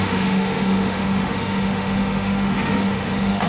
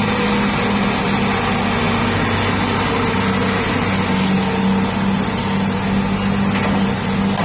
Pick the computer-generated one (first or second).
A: first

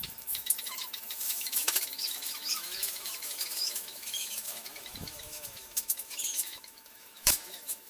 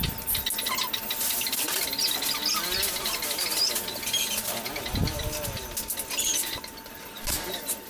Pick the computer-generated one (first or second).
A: first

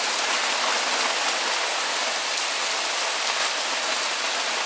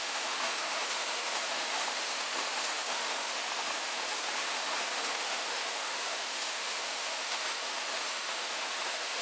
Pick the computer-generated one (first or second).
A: second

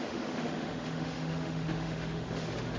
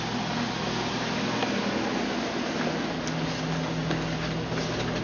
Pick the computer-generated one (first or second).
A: first